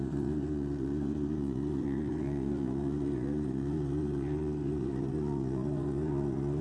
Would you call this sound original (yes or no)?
no